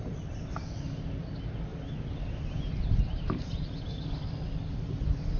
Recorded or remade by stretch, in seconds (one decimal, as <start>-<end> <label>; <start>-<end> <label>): 0.0-5.4 recorded

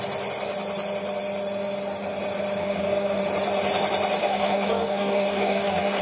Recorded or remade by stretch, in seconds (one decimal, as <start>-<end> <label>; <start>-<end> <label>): 0.0-2.6 recorded; 2.6-3.2 remade; 3.2-4.2 recorded; 4.2-6.0 remade